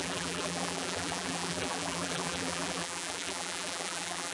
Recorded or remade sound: remade